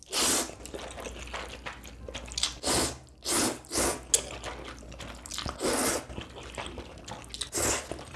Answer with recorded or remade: recorded